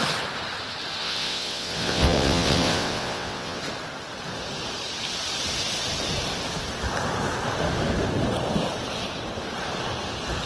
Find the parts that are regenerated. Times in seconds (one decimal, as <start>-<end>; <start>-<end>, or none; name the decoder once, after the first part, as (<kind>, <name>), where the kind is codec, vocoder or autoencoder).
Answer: 1.0-3.6 (vocoder, WaveNeXt)